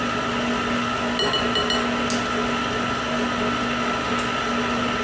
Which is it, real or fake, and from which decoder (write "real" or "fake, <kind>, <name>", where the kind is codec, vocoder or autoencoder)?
real